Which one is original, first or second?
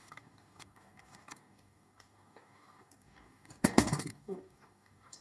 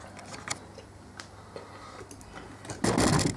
second